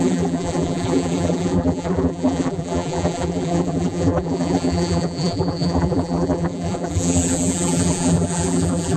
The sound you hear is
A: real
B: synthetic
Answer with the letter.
B